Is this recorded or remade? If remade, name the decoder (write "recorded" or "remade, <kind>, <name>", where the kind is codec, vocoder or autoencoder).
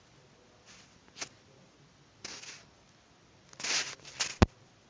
recorded